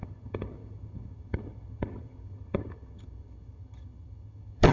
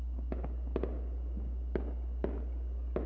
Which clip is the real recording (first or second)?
second